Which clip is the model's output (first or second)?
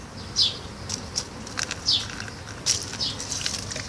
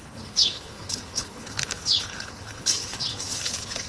second